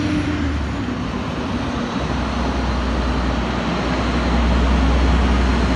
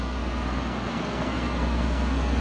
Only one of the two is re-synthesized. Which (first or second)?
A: second